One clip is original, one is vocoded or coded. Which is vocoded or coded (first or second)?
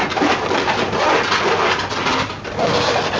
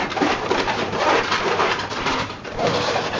second